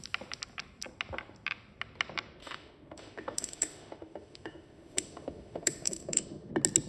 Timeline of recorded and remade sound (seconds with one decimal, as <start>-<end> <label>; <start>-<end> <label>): 0.0-2.4 recorded; 2.4-6.5 remade; 6.5-6.9 recorded